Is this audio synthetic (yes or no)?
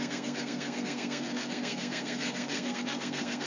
yes